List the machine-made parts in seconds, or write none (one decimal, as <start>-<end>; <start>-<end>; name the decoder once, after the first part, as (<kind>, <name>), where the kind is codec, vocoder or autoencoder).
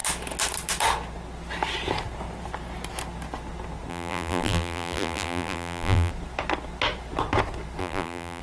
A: 3.9-6.1 (vocoder, BigVGAN v2); 7.8-8.4